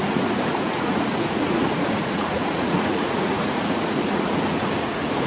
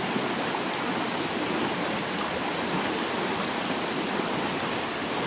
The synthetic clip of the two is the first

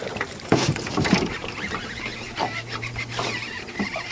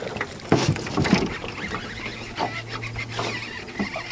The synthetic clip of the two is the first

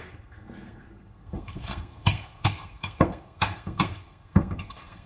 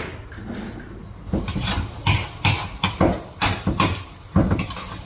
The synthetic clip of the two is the first